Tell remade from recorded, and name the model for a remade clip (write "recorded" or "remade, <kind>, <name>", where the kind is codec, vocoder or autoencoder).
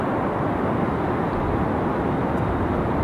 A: recorded